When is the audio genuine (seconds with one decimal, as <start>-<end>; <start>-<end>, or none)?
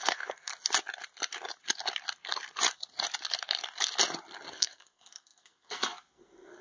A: 0.5-4.5